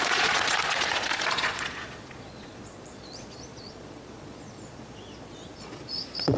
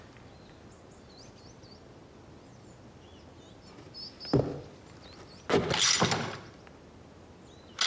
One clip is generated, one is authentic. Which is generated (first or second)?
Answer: first